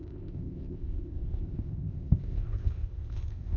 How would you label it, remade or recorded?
remade